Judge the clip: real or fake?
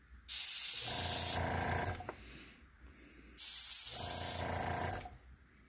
real